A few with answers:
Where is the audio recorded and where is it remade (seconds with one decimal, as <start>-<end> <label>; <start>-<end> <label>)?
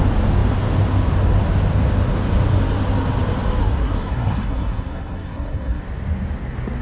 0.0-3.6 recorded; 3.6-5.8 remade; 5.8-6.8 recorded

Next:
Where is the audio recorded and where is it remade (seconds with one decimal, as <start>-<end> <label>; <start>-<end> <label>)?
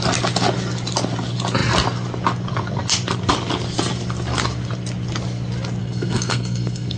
0.0-5.8 recorded; 5.8-7.0 remade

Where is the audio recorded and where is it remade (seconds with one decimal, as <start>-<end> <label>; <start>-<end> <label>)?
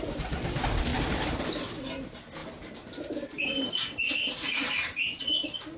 0.0-5.8 recorded